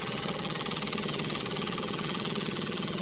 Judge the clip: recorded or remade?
remade